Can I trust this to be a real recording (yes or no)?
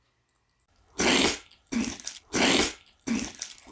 yes